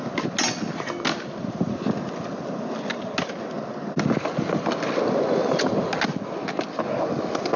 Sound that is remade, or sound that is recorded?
recorded